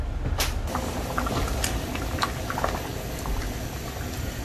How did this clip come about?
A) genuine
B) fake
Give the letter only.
A